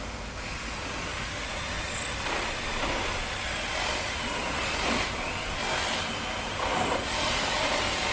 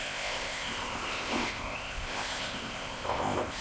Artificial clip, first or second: second